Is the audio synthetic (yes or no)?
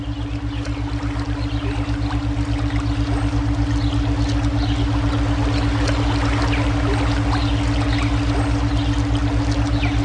no